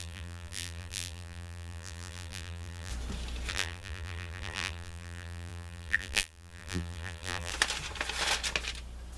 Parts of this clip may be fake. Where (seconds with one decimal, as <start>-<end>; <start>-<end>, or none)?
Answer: 0.0-2.9; 3.5-7.5